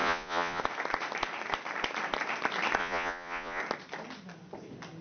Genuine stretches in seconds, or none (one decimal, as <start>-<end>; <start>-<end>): 0.6-2.8; 3.6-5.0